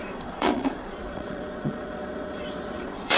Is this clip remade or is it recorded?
remade